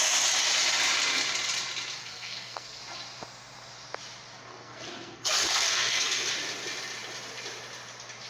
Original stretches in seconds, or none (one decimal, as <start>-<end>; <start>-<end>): 0.0-2.0; 2.8-4.5; 6.3-8.3